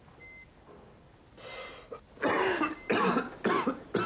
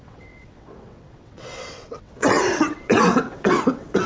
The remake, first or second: second